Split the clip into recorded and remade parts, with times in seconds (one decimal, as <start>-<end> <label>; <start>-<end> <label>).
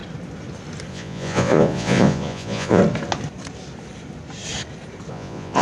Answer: 0.0-0.9 recorded; 0.9-2.8 remade; 2.8-5.1 recorded; 5.1-5.6 remade